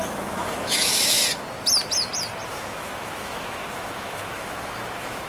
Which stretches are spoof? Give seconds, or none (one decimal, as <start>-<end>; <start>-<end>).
0.0-1.2; 2.5-5.3